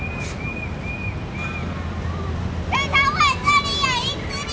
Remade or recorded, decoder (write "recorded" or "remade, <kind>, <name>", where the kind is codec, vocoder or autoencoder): recorded